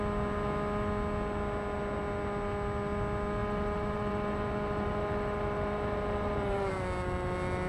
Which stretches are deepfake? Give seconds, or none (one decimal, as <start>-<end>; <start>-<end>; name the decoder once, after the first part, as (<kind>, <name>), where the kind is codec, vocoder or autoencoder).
3.4-6.7 (vocoder, BigVGAN v2)